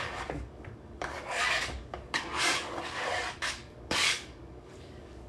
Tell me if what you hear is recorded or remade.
remade